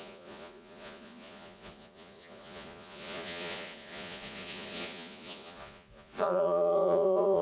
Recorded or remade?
remade